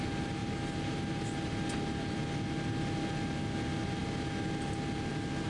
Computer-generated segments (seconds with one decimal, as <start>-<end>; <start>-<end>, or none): none